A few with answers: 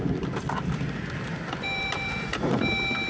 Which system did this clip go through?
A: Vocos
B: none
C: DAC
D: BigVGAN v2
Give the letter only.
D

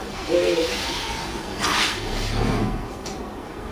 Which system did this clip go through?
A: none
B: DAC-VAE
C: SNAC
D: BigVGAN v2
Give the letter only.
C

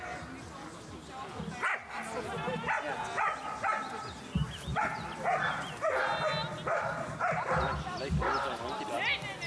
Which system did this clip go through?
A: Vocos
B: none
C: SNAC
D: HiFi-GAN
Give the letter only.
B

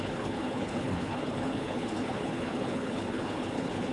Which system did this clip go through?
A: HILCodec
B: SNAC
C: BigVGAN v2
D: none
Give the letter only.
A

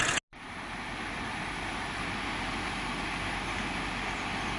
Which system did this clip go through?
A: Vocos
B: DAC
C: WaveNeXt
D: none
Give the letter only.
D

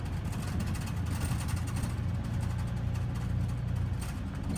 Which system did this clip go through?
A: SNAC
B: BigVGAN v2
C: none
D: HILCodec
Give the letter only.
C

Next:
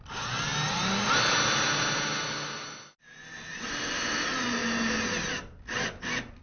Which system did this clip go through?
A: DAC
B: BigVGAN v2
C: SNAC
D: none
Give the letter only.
D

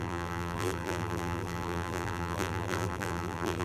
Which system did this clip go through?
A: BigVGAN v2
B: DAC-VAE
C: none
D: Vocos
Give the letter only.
A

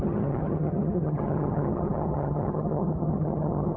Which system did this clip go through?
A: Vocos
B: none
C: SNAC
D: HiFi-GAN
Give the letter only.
D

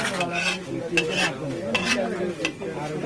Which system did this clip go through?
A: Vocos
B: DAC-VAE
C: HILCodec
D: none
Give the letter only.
D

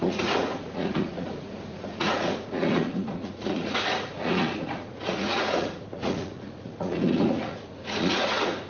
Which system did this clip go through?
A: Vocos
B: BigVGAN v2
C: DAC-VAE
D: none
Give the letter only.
A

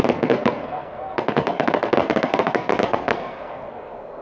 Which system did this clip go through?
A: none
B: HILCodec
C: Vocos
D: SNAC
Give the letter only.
D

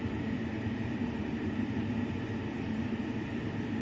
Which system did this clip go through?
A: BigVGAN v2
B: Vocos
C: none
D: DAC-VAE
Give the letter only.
C